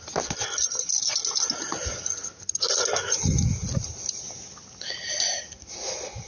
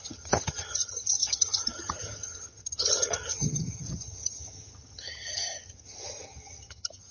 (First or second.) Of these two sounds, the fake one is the second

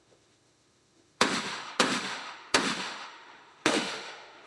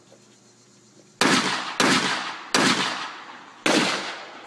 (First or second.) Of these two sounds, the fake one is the first